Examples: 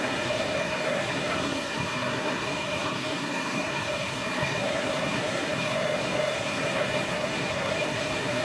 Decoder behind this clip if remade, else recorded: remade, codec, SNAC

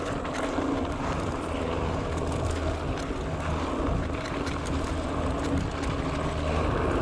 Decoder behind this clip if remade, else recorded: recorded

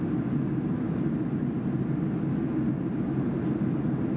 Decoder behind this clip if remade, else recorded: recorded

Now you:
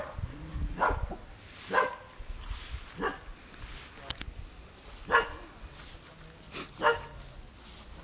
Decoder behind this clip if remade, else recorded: recorded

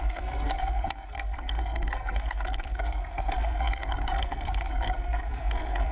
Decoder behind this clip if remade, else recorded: remade, codec, SNAC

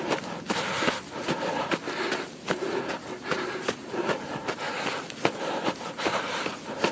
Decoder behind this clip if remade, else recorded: recorded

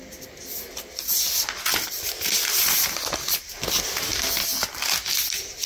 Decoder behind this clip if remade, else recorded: recorded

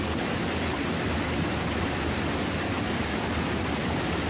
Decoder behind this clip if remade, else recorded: recorded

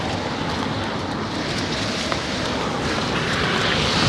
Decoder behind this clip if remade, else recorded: recorded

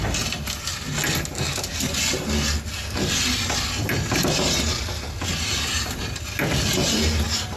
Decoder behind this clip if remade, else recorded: recorded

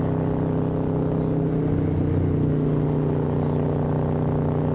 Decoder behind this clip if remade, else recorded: recorded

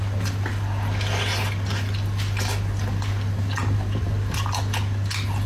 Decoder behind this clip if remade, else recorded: recorded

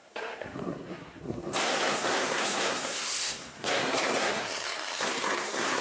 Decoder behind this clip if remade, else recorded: remade, codec, SNAC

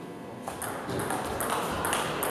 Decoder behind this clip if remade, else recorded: recorded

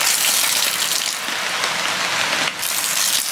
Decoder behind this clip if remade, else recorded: recorded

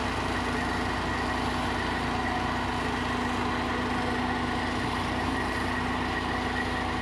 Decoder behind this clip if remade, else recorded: recorded